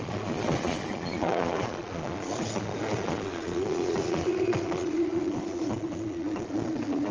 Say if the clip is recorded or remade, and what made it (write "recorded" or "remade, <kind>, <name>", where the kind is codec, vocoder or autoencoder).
remade, vocoder, Vocos